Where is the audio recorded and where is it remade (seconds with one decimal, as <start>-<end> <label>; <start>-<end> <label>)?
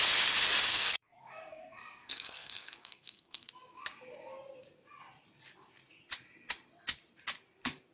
0.0-0.7 recorded; 0.7-3.5 remade; 3.5-7.9 recorded